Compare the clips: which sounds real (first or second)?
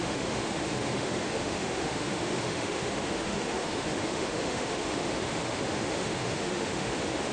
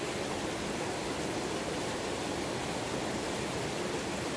second